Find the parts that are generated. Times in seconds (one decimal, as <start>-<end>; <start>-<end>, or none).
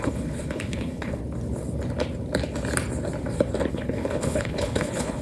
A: 0.0-1.2; 3.7-5.2